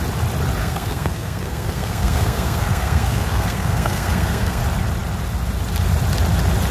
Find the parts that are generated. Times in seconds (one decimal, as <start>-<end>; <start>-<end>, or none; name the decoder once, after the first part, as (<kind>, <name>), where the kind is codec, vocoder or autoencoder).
0.6-4.6 (codec, SNAC)